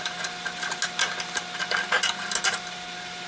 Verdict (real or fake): real